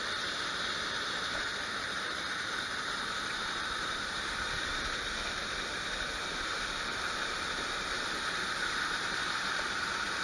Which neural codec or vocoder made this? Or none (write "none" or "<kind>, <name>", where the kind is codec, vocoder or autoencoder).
vocoder, BigVGAN v2